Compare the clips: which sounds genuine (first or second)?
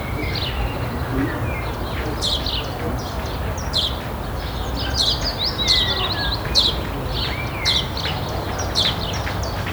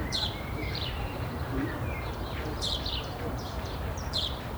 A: first